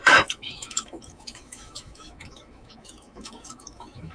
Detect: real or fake fake